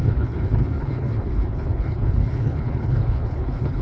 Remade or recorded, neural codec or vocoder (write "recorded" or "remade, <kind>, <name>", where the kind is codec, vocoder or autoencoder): remade, codec, HILCodec